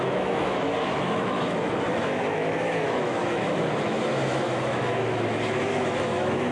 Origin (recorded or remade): remade